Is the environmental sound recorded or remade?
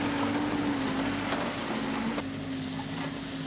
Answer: recorded